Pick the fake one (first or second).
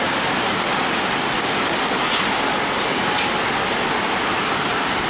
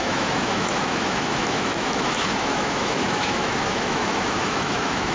second